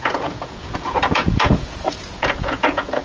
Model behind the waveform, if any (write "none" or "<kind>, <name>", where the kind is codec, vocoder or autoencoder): vocoder, Vocos